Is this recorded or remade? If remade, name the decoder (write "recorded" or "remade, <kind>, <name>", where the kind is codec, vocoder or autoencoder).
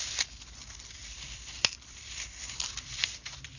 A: remade, vocoder, BigVGAN v2